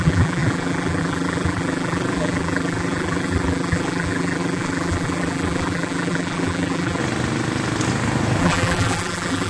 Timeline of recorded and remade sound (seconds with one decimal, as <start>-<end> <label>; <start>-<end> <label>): 0.0-7.0 remade; 7.0-8.4 recorded; 8.4-9.5 remade

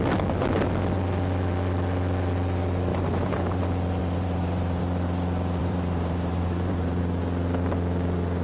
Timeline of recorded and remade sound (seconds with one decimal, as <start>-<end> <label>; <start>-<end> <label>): 0.0-2.9 recorded; 2.9-3.6 remade; 3.6-4.0 recorded; 4.0-4.8 remade; 4.8-5.6 recorded; 5.6-7.0 remade; 7.0-8.4 recorded

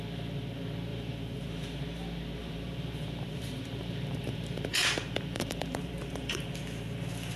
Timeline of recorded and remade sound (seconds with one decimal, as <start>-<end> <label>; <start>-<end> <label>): 0.0-0.9 recorded; 0.9-1.8 remade; 1.8-2.4 recorded; 2.4-6.6 remade; 6.6-7.4 recorded

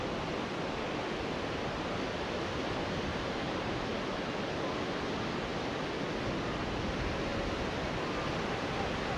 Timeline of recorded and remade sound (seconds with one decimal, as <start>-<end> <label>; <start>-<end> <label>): 0.0-3.1 recorded; 3.1-3.8 remade; 3.8-9.2 recorded

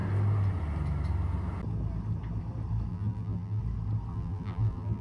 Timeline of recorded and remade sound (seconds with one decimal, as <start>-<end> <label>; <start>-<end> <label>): 0.0-2.9 recorded; 2.9-3.6 remade; 3.6-4.1 recorded; 4.1-5.0 remade

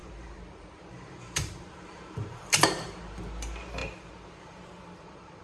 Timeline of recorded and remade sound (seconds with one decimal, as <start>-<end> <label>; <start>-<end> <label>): 0.0-3.2 remade; 3.2-3.8 recorded; 3.8-5.4 remade